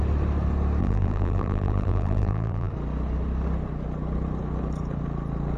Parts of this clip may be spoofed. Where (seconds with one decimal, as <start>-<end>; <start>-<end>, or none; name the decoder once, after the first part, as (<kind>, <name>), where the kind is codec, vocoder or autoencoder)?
0.8-2.7 (vocoder, BigVGAN v2)